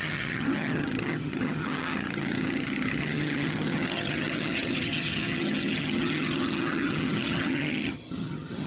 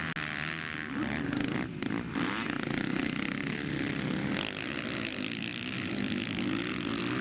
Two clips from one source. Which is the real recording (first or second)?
second